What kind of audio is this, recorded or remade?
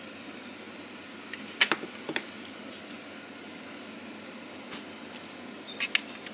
recorded